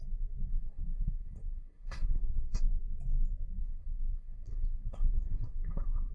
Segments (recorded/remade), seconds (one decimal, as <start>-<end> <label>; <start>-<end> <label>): 0.0-0.5 recorded; 0.5-2.6 remade; 2.6-3.6 recorded; 3.6-6.1 remade